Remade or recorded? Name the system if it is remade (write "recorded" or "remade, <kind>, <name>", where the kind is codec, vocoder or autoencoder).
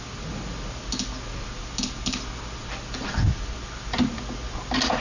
recorded